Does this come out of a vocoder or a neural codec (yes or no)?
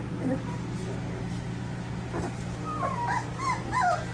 no